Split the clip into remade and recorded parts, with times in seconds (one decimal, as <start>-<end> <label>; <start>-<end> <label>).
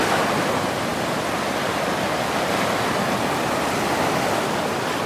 0.0-5.1 recorded